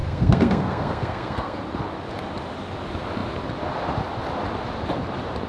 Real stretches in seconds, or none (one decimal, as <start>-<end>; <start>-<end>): 1.6-5.5